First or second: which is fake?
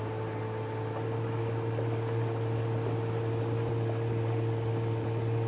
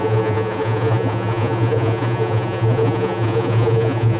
second